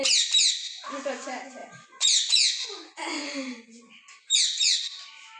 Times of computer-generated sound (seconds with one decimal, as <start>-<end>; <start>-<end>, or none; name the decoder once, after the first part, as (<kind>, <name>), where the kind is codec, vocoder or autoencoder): 1.6-4.8 (vocoder, Vocos)

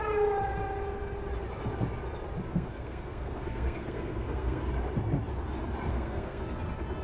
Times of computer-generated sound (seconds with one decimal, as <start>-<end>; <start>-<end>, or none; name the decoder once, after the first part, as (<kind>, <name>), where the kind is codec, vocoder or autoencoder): 2.5-4.7 (codec, SNAC); 5.9-6.4

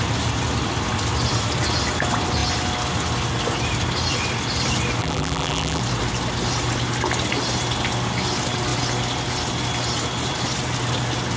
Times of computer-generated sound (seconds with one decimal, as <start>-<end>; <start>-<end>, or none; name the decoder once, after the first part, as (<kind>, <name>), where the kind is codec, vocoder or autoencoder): 5.0-5.8 (vocoder, BigVGAN v2)

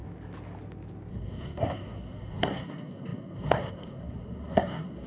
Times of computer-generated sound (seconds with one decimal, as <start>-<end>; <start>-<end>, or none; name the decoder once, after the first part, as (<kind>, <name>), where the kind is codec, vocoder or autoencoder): 1.1-5.1 (codec, SNAC)

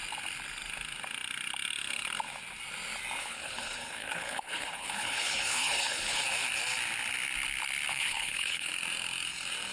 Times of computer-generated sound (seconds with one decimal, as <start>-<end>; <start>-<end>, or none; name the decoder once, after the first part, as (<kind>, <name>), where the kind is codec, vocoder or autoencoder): 3.2-6.2 (codec, HILCodec); 7.9-8.7

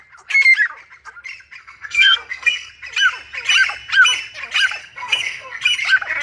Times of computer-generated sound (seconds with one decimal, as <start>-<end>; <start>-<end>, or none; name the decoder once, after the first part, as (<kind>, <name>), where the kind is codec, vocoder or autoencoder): 1.6-2.7 (codec, SNAC); 4.8-5.6

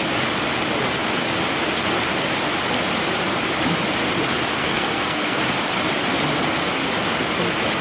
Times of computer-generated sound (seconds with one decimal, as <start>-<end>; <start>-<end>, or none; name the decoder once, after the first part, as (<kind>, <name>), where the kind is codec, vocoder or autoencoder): 4.6-5.4 (codec, SNAC)